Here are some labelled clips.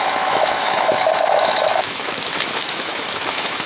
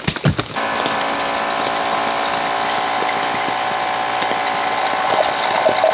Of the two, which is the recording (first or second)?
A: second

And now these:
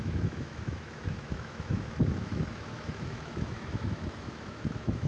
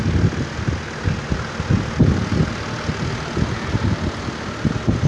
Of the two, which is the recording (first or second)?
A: second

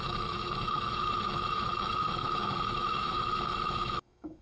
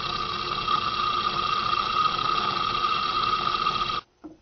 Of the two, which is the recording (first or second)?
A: second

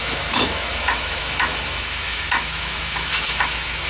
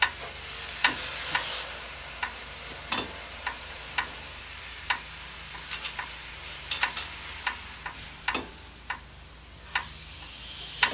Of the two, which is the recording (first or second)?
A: second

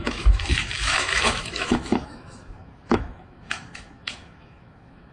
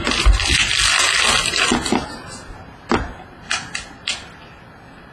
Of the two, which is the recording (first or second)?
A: second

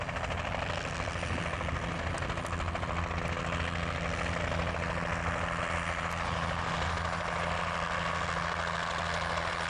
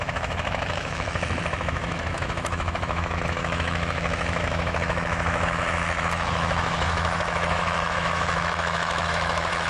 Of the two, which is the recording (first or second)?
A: first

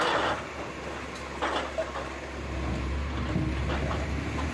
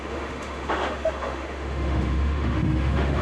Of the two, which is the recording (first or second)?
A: first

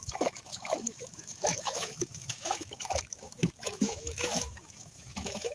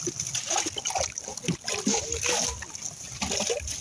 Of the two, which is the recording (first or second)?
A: second